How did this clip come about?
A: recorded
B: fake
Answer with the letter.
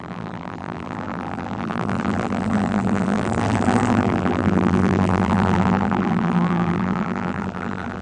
B